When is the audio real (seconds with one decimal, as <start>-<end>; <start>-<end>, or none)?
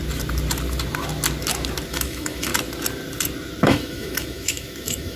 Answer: 0.0-1.9; 2.5-3.6